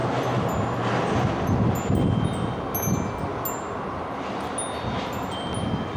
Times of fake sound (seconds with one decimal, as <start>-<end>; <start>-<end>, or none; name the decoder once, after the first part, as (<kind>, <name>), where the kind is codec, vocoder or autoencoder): none